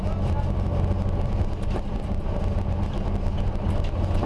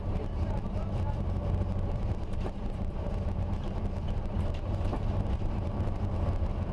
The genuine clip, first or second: first